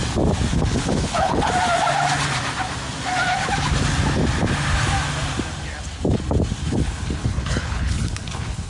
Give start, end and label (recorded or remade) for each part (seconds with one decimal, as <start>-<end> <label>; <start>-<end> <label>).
0.0-0.5 recorded; 0.5-1.5 remade; 1.5-6.6 recorded; 6.6-8.7 remade